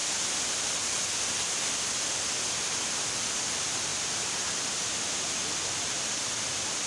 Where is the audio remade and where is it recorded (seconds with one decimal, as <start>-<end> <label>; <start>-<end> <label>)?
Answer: 0.0-0.7 remade; 0.7-3.9 recorded; 3.9-5.3 remade; 5.3-6.9 recorded